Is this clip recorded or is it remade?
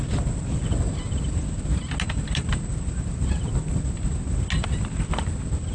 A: recorded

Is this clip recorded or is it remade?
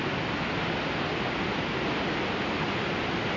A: recorded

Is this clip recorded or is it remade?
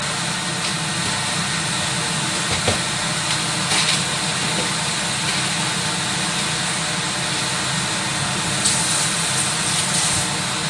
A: recorded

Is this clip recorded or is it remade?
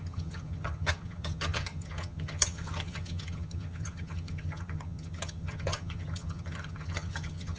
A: remade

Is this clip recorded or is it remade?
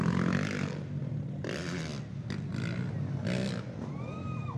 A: recorded